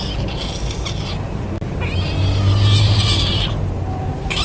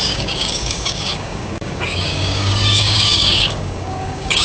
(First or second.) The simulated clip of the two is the second